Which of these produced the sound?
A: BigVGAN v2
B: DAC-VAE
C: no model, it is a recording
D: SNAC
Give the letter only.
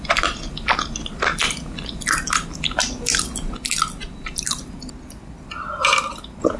C